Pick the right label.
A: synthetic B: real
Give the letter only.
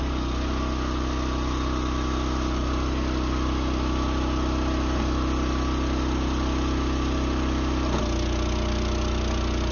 B